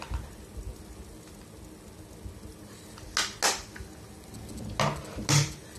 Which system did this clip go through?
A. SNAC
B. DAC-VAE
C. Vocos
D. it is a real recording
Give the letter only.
D